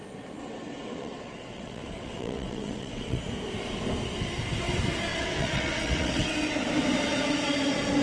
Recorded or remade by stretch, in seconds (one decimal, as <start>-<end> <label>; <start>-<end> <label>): 0.0-0.4 recorded; 0.4-3.2 remade; 3.2-5.1 recorded; 5.1-6.5 remade; 6.5-8.0 recorded